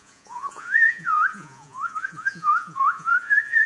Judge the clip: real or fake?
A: fake